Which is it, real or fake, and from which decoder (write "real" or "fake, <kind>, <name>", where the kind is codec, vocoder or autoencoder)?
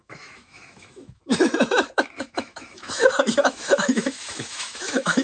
fake, autoencoder, DAC-VAE